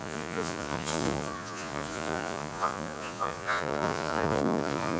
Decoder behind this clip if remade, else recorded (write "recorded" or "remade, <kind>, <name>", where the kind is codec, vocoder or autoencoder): remade, vocoder, Vocos